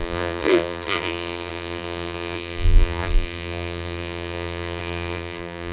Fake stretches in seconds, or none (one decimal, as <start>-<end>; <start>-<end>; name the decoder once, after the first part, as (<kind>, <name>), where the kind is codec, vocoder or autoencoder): 0.0-5.7 (vocoder, BigVGAN v2)